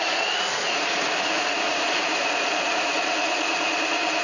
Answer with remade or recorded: remade